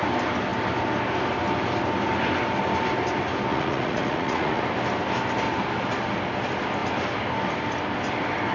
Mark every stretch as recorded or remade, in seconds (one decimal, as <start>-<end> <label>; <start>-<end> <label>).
0.0-3.5 recorded; 3.5-4.6 remade; 4.6-8.5 recorded

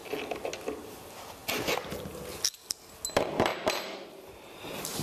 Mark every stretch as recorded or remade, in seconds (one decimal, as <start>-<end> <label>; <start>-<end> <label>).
0.0-5.0 recorded

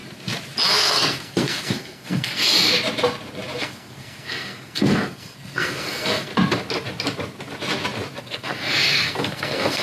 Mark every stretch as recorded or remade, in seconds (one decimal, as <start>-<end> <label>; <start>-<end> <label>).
0.0-0.7 recorded; 0.7-2.5 remade; 2.5-3.6 recorded; 3.6-6.3 remade; 6.3-8.2 recorded; 8.2-9.8 remade

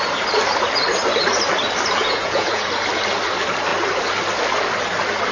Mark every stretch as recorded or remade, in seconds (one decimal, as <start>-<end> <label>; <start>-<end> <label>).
0.0-2.0 recorded; 2.0-2.7 remade; 2.7-5.3 recorded

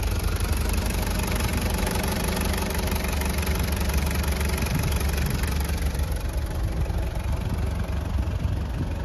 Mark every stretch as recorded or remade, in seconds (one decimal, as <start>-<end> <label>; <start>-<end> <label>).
0.0-1.5 recorded; 1.5-2.2 remade; 2.2-9.0 recorded

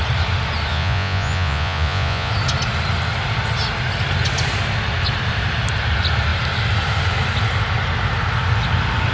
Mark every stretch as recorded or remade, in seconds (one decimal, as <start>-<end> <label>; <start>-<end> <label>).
0.0-0.7 recorded; 0.7-2.3 remade; 2.3-9.1 recorded

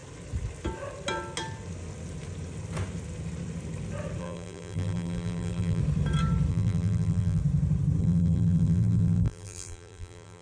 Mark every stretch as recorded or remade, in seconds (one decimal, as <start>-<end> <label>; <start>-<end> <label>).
0.0-4.2 recorded; 4.2-5.8 remade; 5.8-6.5 recorded; 6.5-7.4 remade; 7.4-8.0 recorded; 8.0-10.4 remade

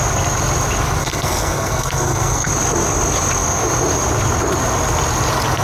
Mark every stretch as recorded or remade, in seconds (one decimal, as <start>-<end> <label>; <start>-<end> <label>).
0.0-1.0 recorded; 1.0-2.5 remade; 2.5-5.6 recorded